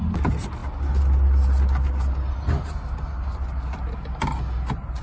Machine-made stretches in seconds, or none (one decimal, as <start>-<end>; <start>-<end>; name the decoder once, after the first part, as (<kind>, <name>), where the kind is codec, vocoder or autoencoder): none